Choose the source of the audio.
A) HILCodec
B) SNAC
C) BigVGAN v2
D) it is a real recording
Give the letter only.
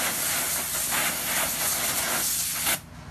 D